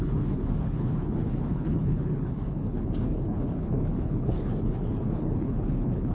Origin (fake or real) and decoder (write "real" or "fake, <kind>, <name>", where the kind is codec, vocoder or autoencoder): fake, codec, HILCodec